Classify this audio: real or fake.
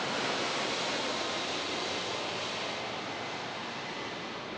real